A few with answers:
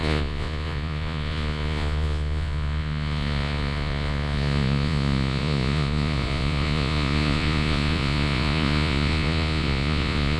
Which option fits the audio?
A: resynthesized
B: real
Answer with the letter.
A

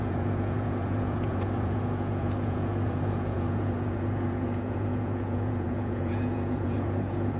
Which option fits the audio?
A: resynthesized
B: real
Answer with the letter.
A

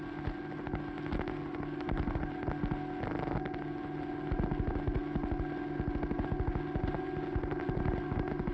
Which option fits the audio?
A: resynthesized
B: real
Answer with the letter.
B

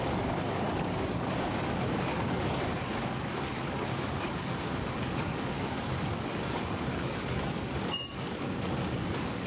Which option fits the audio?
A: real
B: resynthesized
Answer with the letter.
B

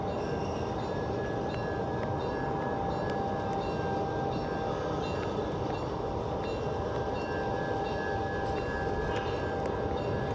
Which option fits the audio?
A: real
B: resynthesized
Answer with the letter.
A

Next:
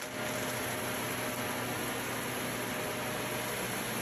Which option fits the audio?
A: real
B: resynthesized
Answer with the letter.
A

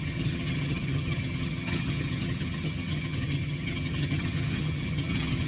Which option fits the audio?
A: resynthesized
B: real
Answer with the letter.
A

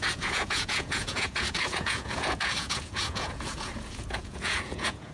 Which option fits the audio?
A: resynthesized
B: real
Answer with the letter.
A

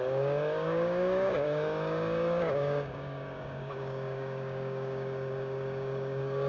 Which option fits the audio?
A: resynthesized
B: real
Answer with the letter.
A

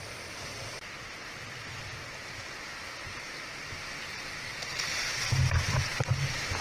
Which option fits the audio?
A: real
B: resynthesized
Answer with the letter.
A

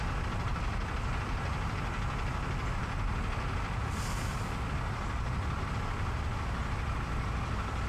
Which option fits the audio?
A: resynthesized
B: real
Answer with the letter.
B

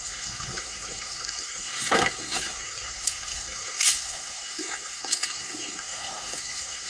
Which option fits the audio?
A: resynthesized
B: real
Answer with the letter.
A